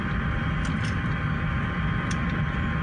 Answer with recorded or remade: recorded